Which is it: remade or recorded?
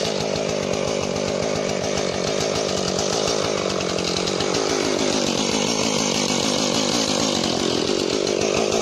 recorded